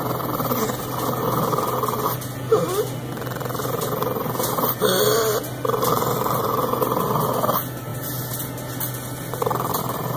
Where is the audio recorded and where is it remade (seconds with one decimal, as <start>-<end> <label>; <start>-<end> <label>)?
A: 0.0-10.2 recorded